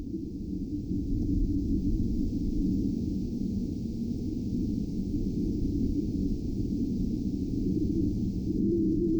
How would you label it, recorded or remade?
recorded